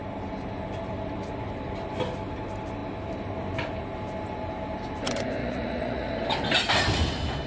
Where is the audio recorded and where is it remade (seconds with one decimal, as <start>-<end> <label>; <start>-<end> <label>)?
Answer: 0.0-5.4 recorded; 5.4-6.1 remade; 6.1-7.5 recorded